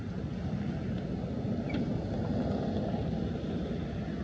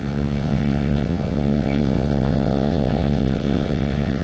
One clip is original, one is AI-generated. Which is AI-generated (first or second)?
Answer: second